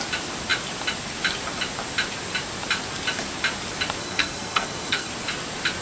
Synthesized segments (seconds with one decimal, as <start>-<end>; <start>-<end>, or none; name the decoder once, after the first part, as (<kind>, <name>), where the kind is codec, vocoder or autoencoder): 4.0-5.1 (codec, SNAC)